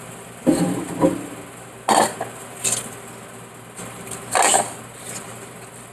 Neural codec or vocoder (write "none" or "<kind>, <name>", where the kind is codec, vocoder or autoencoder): none